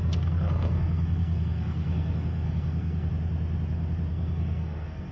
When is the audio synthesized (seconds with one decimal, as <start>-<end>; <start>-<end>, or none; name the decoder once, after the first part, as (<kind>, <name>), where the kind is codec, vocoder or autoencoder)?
0.0-3.1 (codec, SNAC); 4.1-5.1